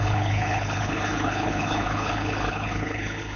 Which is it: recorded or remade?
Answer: remade